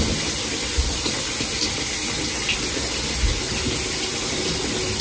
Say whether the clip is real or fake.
real